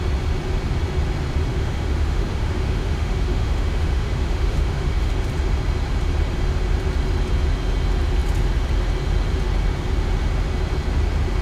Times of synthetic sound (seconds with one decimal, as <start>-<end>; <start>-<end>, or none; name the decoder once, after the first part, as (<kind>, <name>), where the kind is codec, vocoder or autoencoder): 1.5-5.1 (autoencoder, DAC-VAE)